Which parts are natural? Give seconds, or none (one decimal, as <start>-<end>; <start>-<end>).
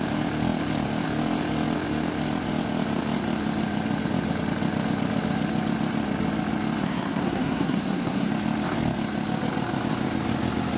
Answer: 0.0-6.8; 8.3-10.8